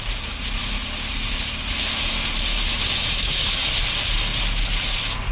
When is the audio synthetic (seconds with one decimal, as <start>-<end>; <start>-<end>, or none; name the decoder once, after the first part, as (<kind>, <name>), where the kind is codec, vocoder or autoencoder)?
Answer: 2.5-3.7 (autoencoder, DAC-VAE)